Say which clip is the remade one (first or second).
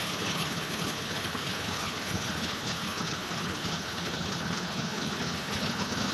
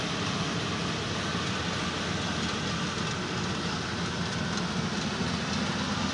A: first